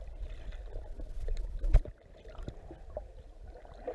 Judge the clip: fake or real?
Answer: real